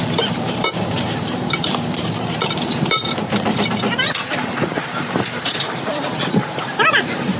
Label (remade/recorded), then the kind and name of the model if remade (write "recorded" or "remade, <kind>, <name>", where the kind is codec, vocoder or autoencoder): remade, vocoder, BigVGAN v2